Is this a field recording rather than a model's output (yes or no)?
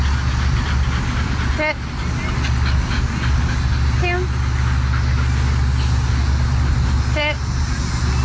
yes